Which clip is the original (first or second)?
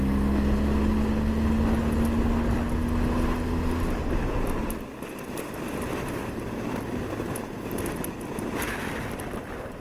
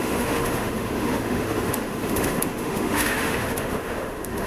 first